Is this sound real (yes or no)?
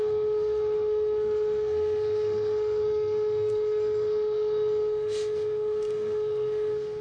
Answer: no